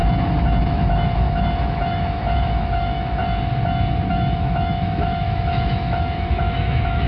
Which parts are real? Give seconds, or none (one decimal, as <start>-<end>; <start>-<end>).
0.0-0.6; 3.2-4.1